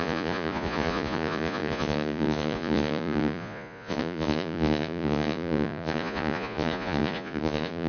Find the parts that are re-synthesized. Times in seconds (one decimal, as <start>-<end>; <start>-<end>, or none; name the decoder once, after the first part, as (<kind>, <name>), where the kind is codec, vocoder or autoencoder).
0.0-7.9 (vocoder, Vocos)